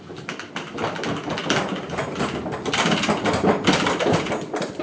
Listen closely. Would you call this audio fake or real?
real